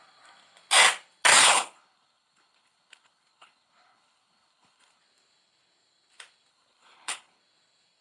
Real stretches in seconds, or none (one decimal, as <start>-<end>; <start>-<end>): 0.0-1.4; 5.0-6.5; 7.4-8.0